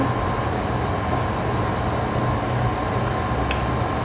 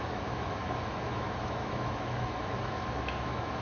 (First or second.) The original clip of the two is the first